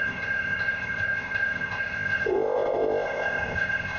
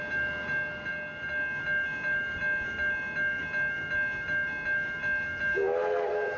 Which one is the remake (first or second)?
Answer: first